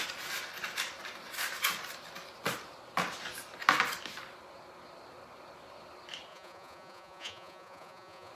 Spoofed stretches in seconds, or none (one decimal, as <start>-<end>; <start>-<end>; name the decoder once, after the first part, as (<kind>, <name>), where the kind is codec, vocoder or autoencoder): 6.3-8.3 (vocoder, Vocos)